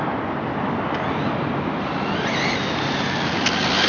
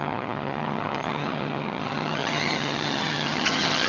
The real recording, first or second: first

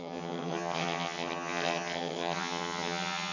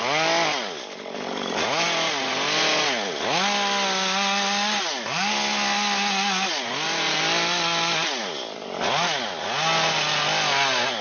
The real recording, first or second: second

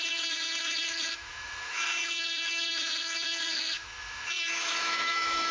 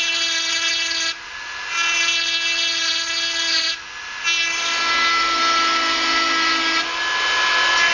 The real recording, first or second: second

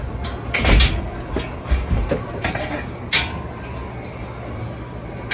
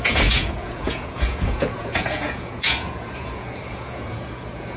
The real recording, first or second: first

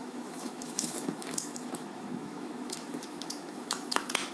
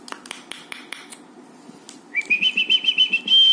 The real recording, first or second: second